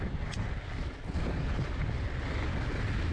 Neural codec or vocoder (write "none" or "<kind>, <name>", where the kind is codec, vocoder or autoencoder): none